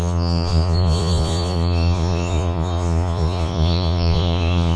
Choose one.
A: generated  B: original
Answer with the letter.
A